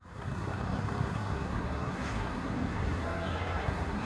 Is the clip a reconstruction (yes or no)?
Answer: yes